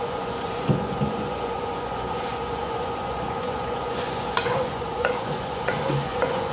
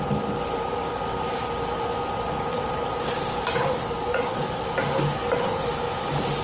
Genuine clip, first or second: second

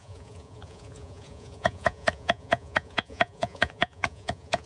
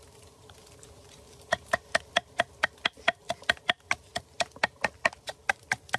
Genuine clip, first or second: second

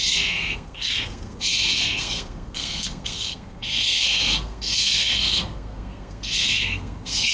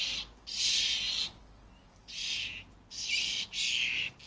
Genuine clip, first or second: second